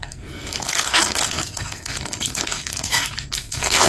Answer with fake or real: fake